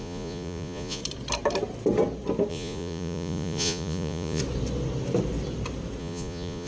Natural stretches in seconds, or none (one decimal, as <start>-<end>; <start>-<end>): 1.0-2.5; 4.4-6.0